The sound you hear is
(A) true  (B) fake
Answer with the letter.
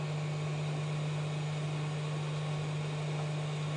A